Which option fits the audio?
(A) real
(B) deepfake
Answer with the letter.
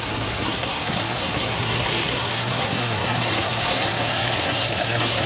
B